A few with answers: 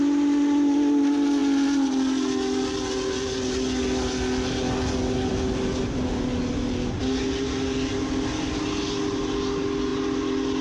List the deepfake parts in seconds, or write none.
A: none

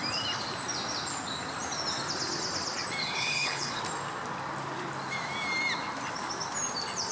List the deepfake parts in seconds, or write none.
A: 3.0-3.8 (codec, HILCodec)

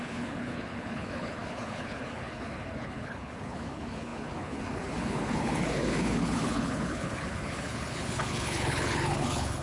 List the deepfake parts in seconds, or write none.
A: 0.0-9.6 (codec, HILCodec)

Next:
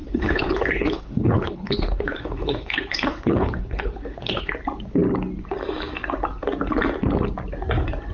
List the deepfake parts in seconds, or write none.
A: 0.0-4.5 (codec, HILCodec)

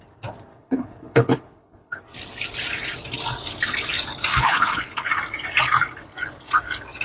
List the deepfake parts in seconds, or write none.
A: 0.5-2.0 (codec, HILCodec); 4.3-5.1